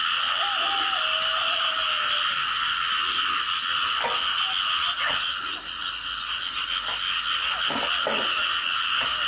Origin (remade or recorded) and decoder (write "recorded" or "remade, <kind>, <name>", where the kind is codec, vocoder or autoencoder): recorded